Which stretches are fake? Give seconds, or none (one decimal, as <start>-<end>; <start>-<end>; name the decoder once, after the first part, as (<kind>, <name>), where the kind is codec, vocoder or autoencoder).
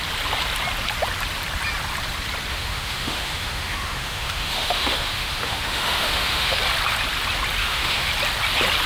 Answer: 2.5-6.6 (autoencoder, DAC-VAE); 7.6-8.1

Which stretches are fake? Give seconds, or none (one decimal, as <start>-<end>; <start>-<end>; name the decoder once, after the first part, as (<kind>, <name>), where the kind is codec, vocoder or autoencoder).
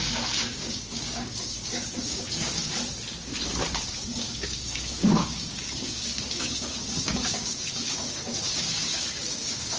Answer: 0.0-2.6 (codec, DAC); 3.9-9.8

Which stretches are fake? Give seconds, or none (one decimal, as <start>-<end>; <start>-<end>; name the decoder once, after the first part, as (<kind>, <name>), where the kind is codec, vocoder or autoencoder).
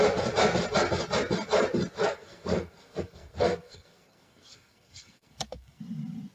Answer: 2.0-5.8 (codec, SNAC)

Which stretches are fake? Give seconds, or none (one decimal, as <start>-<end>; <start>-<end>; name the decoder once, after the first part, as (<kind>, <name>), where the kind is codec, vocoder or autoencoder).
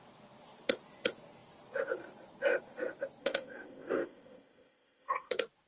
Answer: 3.2-5.3 (codec, ZipCodec)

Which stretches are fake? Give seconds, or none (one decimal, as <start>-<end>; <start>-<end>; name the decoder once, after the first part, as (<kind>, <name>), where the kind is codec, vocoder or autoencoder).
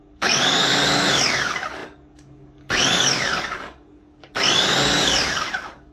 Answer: 0.0-5.9 (codec, DAC)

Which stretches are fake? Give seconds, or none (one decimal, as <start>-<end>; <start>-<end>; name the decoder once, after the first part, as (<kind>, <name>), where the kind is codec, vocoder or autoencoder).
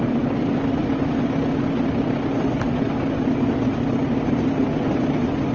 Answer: none